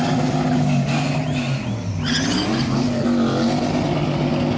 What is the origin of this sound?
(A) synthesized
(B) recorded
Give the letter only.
B